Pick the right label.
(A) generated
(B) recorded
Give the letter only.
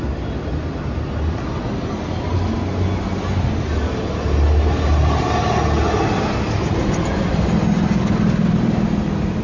B